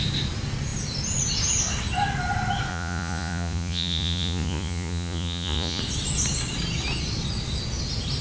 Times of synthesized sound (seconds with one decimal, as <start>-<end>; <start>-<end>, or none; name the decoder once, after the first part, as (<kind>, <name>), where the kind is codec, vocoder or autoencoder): 2.7-5.8 (vocoder, Vocos)